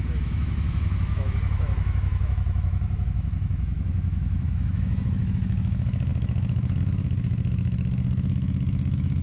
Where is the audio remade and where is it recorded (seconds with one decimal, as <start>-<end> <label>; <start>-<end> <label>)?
0.0-9.2 remade